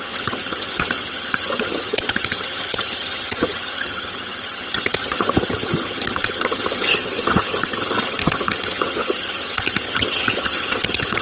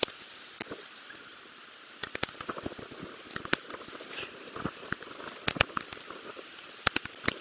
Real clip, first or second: second